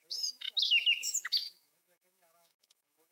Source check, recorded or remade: remade